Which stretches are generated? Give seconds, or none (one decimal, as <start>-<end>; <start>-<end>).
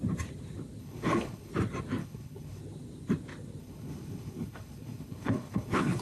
0.8-1.5; 2.0-2.6; 3.6-6.0